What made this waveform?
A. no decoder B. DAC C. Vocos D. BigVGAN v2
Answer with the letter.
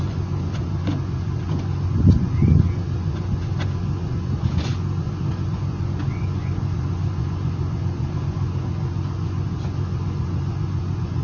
C